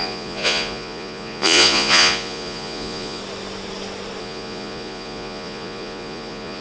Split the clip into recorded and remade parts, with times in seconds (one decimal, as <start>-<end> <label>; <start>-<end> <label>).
0.0-3.2 remade; 3.2-4.2 recorded; 4.2-6.6 remade